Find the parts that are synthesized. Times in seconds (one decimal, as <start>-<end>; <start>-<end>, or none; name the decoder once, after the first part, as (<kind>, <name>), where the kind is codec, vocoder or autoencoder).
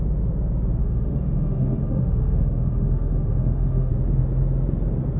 0.8-3.9 (autoencoder, DAC-VAE)